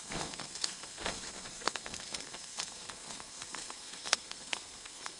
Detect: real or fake fake